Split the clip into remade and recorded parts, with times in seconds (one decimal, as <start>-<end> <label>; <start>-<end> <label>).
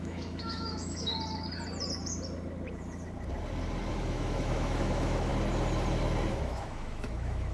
0.0-1.1 remade; 1.1-3.9 recorded; 3.9-5.3 remade; 5.3-6.3 recorded; 6.3-7.5 remade